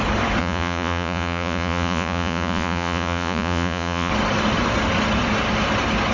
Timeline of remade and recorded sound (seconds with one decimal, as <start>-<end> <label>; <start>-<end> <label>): 0.0-0.4 recorded; 0.4-4.1 remade; 4.1-6.1 recorded